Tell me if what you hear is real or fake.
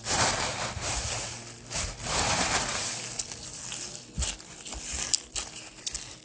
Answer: real